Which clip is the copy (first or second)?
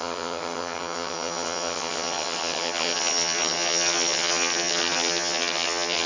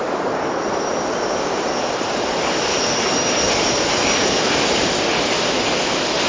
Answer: first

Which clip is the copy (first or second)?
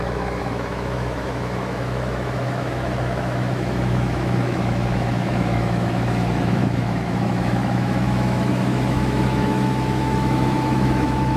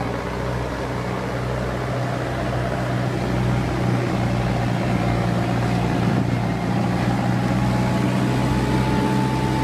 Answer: first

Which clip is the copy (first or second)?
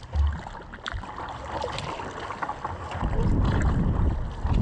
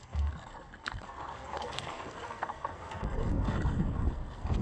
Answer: second